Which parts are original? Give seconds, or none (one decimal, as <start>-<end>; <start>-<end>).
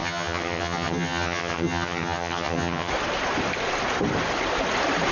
2.9-5.1